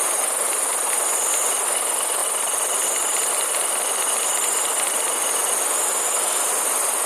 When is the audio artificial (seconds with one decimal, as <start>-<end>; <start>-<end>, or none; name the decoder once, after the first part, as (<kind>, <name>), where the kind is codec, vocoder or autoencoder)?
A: none